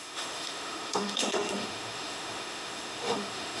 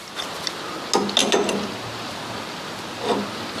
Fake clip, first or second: first